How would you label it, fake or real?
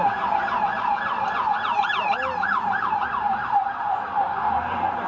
fake